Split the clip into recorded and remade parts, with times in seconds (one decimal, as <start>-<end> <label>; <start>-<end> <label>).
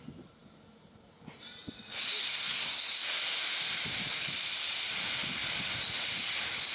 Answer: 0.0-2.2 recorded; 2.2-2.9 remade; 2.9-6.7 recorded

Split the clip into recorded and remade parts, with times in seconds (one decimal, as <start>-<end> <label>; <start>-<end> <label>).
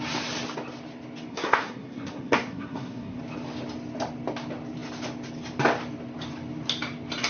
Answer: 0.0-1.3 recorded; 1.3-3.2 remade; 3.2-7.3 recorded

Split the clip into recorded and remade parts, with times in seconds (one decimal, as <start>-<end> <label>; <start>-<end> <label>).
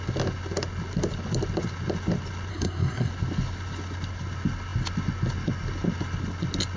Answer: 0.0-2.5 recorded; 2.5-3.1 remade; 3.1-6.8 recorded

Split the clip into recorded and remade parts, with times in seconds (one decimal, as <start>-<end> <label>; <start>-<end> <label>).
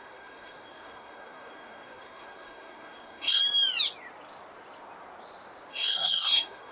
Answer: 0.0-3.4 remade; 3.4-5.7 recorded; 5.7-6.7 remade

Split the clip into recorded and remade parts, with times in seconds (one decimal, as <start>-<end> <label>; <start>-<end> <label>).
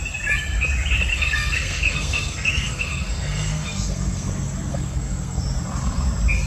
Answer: 0.0-1.1 recorded; 1.1-4.3 remade; 4.3-4.7 recorded; 4.7-5.4 remade; 5.4-6.5 recorded